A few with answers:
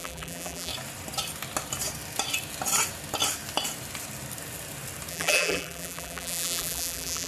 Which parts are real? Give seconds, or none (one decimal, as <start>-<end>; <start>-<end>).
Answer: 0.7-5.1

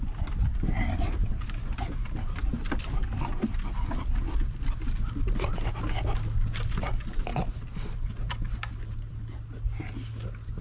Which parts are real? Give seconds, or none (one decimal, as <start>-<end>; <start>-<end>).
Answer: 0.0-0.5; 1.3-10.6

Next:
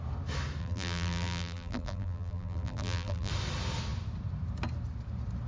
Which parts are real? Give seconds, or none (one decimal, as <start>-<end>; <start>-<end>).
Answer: 0.0-0.6; 3.3-5.5